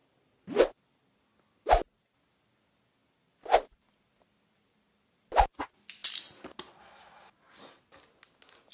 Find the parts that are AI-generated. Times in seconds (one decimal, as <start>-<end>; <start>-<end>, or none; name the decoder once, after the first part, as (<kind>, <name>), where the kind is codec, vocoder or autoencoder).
none